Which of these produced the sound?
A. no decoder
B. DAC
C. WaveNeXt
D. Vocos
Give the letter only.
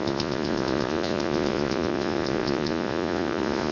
D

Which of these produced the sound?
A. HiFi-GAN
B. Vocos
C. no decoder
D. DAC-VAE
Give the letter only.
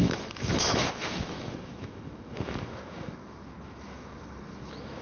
D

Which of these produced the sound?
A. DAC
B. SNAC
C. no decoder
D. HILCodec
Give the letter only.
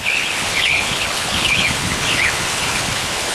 D